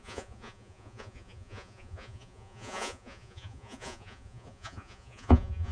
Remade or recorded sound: remade